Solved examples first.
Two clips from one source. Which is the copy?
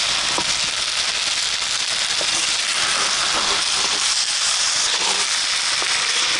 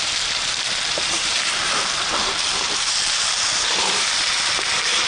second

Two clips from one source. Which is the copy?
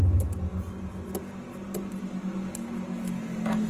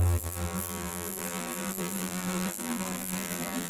second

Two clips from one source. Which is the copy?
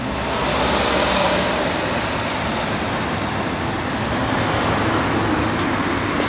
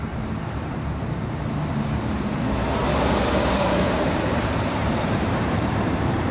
second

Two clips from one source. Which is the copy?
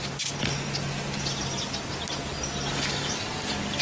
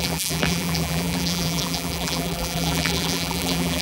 second